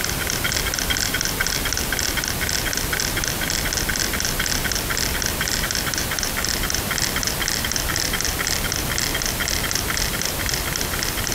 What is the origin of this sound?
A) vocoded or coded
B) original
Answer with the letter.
A